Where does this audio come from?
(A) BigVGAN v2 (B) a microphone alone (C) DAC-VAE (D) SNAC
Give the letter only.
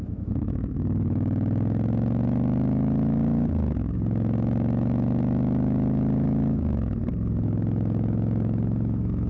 C